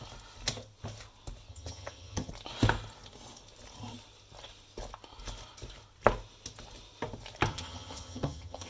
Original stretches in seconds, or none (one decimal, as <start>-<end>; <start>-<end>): 0.0-1.5; 2.3-7.5